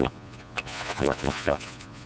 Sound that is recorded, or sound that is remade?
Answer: remade